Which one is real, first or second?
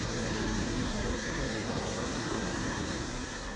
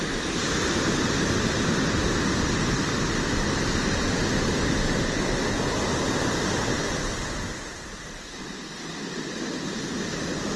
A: second